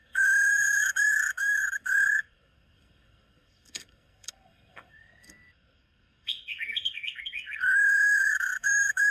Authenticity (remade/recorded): remade